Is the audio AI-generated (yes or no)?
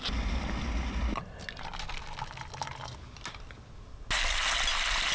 no